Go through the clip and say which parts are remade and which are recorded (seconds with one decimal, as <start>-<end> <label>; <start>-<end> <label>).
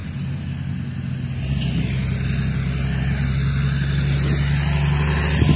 0.0-5.6 recorded